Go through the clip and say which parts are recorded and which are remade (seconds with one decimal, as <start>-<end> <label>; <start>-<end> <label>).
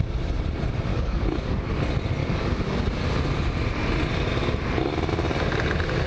0.0-0.9 recorded; 0.9-1.7 remade; 1.7-2.2 recorded; 2.2-2.9 remade; 2.9-6.1 recorded